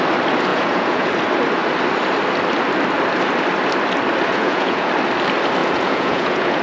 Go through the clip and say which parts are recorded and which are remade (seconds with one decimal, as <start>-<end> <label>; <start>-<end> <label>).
0.0-0.5 recorded; 0.5-1.1 remade; 1.1-4.3 recorded; 4.3-4.9 remade; 4.9-5.6 recorded; 5.6-6.6 remade